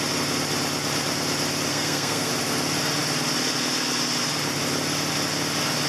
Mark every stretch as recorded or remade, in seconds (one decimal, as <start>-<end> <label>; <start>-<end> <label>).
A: 0.0-1.7 recorded; 1.7-2.3 remade; 2.3-5.9 recorded